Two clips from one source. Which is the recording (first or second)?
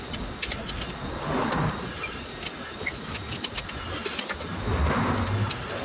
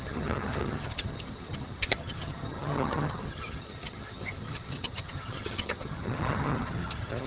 first